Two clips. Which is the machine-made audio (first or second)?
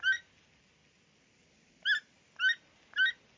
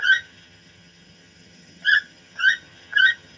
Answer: second